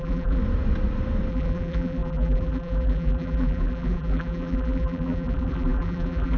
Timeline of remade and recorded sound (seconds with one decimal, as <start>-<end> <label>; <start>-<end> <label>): 0.0-0.4 remade; 0.4-1.3 recorded; 1.3-6.4 remade